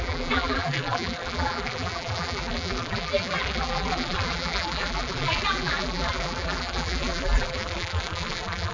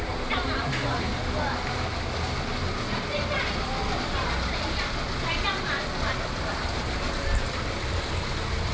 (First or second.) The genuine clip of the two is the second